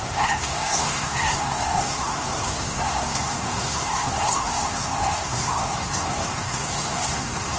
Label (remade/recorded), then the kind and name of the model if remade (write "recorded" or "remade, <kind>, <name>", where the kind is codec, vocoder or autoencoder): remade, codec, SNAC